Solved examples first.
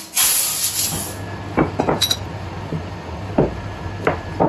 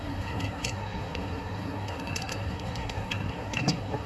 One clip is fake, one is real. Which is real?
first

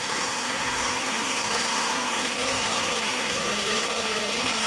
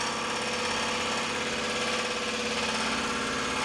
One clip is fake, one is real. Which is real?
second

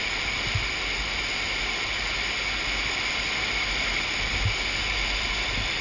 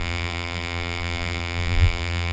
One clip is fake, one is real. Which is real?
first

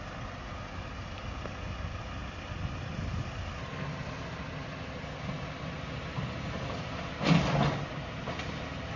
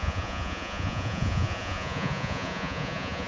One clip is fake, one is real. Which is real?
first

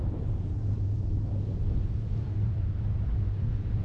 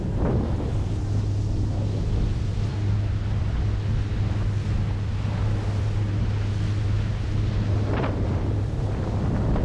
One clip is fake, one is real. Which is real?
second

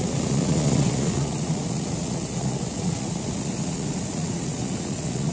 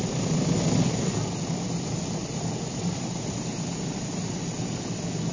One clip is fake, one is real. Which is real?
second